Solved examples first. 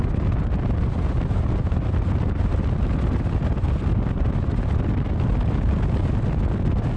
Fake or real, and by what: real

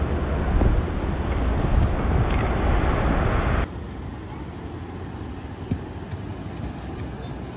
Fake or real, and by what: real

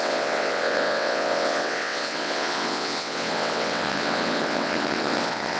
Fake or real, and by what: fake, vocoder, WaveNeXt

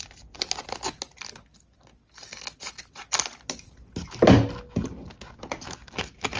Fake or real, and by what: real